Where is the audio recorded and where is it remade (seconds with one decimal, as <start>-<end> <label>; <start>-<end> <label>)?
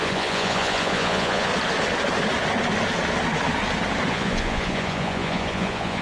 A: 0.0-1.5 remade; 1.5-4.1 recorded; 4.1-6.0 remade